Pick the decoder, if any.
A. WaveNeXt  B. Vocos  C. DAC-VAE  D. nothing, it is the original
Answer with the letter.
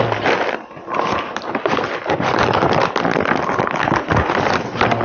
D